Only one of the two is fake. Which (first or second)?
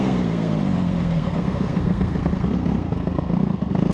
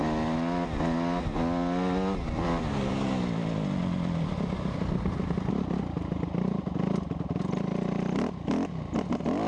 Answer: first